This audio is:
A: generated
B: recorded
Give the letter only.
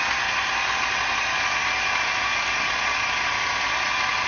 B